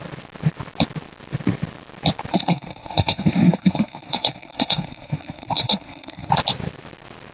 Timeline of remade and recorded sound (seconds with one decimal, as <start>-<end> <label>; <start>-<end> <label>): 0.0-2.3 recorded; 2.3-6.3 remade; 6.3-7.3 recorded